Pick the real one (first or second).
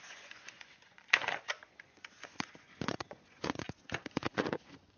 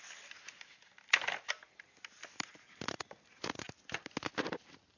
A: second